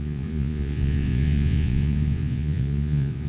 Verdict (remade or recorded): remade